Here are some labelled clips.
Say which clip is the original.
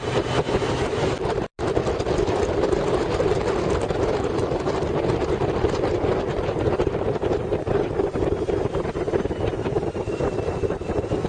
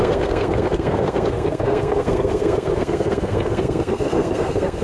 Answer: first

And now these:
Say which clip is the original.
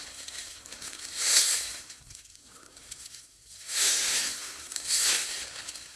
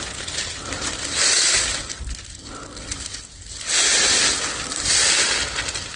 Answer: second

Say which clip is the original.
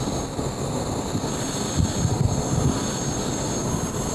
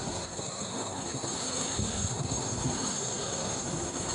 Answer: first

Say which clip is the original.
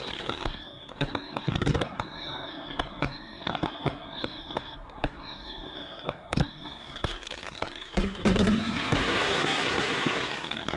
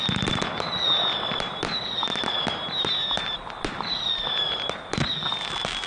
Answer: second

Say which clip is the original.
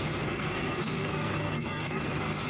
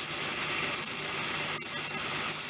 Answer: second